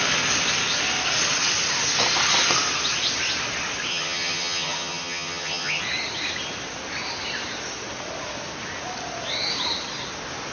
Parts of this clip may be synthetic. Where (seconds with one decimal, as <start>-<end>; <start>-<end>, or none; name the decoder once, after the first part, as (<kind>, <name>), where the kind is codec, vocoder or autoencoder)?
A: 3.9-5.8 (vocoder, HiFi-GAN)